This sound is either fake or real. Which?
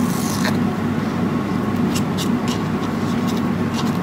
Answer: real